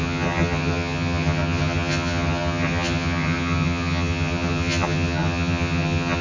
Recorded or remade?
remade